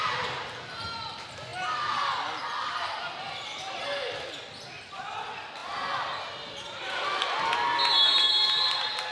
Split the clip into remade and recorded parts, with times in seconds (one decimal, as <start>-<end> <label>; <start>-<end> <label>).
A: 0.0-9.1 recorded